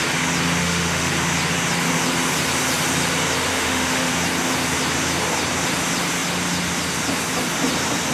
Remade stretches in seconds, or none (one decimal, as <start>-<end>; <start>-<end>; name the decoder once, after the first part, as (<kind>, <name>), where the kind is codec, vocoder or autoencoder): 0.6-1.1 (autoencoder, DAC-VAE); 3.5-4.1